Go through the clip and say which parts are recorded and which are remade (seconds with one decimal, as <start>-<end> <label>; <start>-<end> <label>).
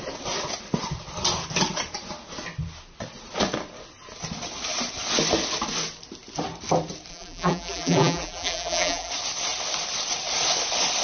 0.0-7.1 recorded; 7.1-9.1 remade; 9.1-11.0 recorded